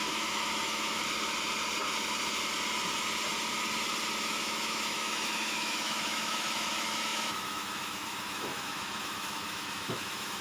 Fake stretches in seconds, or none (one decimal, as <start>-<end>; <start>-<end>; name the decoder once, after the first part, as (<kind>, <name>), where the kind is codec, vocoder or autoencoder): 0.0-1.0 (autoencoder, DAC-VAE); 4.2-10.4